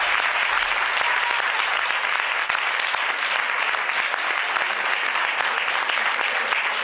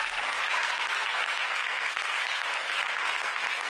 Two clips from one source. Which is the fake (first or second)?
second